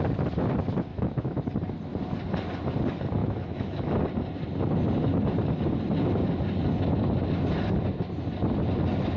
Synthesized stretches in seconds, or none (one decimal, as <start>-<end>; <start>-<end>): 0.9-1.5; 3.2-3.9